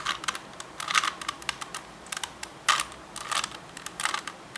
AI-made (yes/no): no